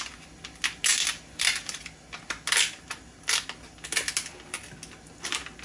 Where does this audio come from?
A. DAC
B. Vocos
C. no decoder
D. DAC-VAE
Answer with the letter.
C